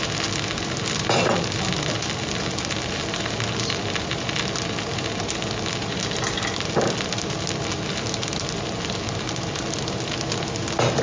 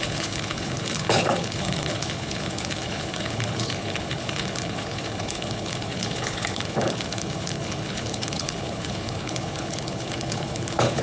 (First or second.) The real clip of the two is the first